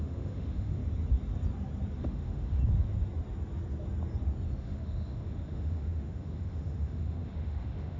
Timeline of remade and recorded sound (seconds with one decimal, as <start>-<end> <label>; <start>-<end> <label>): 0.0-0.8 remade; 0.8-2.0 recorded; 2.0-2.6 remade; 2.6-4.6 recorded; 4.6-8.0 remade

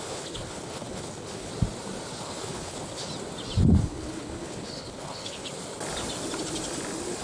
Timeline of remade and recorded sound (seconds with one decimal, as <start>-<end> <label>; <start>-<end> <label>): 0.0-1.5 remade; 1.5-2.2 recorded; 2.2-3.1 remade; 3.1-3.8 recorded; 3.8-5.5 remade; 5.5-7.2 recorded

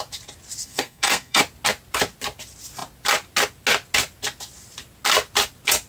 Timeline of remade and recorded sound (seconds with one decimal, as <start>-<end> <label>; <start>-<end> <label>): 0.0-0.6 recorded; 0.6-1.4 remade; 1.4-5.9 recorded

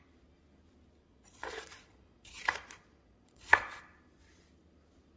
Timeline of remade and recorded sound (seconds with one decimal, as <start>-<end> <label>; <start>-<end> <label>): 0.0-1.1 recorded; 1.1-3.8 remade; 3.8-5.2 recorded